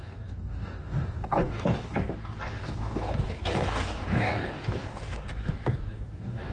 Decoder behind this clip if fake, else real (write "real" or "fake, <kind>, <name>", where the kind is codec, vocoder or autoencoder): fake, codec, DAC